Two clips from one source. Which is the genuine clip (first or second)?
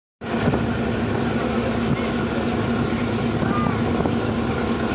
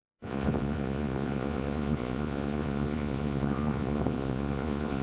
first